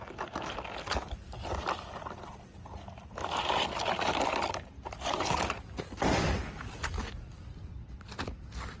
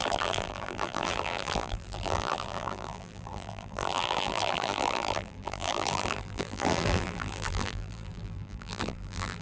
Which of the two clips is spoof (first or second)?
second